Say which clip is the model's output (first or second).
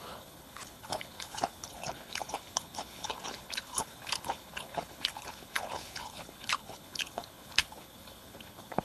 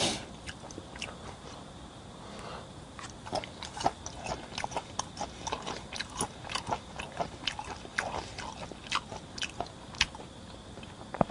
first